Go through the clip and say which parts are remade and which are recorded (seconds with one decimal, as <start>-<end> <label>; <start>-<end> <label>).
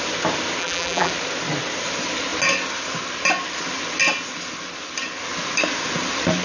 0.0-0.6 recorded; 0.6-1.1 remade; 1.1-6.4 recorded